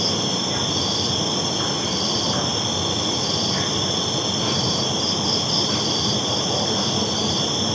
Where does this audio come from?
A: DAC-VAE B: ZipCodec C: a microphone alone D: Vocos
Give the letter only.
C